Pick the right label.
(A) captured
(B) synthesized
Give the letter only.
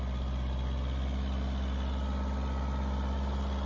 A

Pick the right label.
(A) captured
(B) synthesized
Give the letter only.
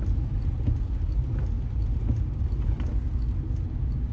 A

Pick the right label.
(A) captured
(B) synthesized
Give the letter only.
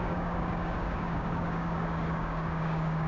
B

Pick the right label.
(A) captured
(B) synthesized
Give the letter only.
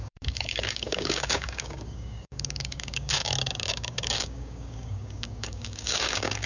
B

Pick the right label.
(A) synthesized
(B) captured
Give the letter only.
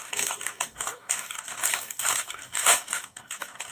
A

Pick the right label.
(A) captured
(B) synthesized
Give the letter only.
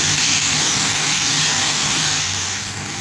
B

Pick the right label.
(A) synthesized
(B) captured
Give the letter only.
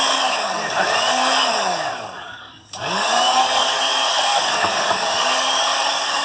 A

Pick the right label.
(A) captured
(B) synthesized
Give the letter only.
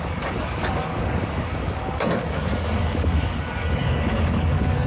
B